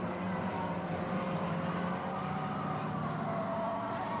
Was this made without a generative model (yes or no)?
yes